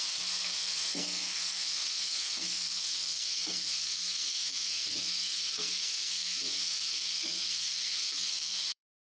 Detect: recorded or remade remade